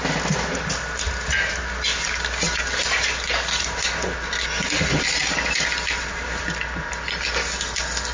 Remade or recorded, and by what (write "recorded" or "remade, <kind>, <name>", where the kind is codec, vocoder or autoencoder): recorded